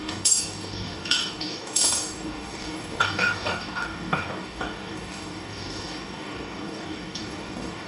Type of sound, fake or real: fake